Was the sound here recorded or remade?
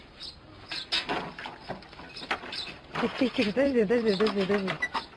recorded